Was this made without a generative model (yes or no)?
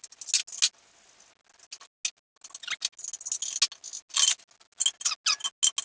yes